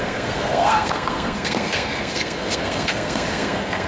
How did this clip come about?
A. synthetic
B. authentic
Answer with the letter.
A